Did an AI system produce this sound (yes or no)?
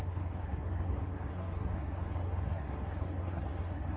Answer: yes